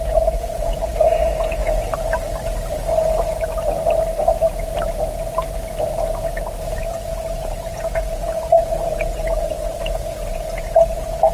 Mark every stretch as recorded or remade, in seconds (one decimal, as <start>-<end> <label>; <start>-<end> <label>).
0.0-1.6 remade; 1.6-6.8 recorded; 6.8-9.8 remade; 9.8-10.3 recorded; 10.3-11.3 remade